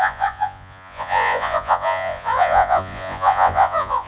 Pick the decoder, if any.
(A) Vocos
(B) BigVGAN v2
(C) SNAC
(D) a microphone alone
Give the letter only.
A